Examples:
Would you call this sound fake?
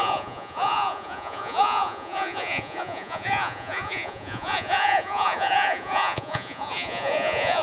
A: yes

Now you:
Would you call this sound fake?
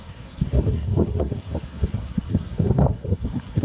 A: yes